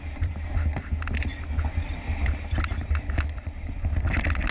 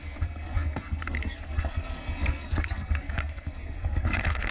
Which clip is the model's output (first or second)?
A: second